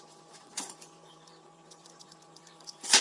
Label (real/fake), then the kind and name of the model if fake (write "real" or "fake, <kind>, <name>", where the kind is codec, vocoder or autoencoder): fake, vocoder, Vocos